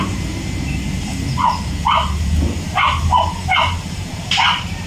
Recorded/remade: remade